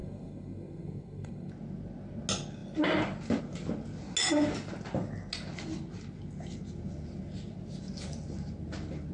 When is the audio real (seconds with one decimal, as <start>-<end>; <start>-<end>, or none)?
1.5-9.1

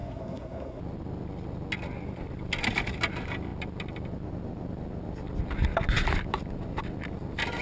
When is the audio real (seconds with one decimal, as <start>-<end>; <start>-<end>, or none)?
0.8-7.6

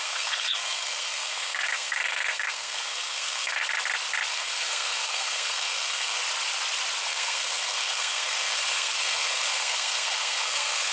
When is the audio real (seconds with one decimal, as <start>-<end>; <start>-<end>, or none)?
3.6-4.3; 6.2-7.0

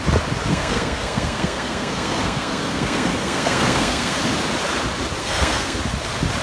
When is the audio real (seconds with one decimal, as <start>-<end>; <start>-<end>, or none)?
0.0-0.5; 4.2-5.2; 5.8-6.4

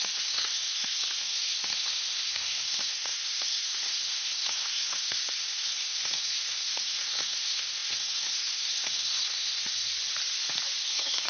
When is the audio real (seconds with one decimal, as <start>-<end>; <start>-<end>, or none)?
9.9-10.8

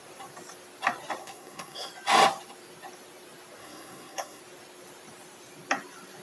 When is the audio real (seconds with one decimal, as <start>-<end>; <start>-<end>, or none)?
0.0-1.2; 1.9-3.6; 4.4-6.2

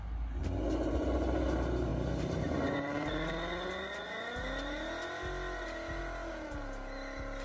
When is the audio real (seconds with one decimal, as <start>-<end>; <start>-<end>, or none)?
0.0-7.4